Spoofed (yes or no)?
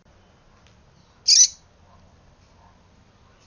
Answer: no